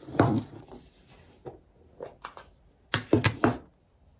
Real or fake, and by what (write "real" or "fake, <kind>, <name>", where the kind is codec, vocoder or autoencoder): real